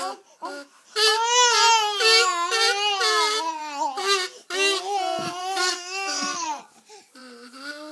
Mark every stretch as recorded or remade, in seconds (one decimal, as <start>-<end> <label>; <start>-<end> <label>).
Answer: 0.0-5.4 recorded; 5.4-6.6 remade; 6.6-7.9 recorded